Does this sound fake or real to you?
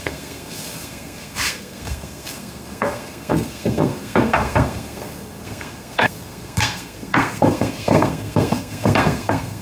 fake